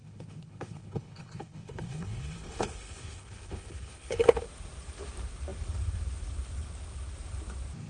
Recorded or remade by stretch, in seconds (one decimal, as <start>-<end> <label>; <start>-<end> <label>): 0.0-4.4 remade; 4.4-7.9 recorded